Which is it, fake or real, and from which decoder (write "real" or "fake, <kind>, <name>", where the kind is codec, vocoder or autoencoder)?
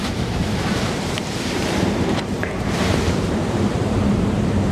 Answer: fake, vocoder, BigVGAN v2